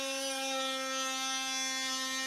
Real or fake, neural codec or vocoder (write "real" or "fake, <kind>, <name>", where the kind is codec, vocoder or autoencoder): real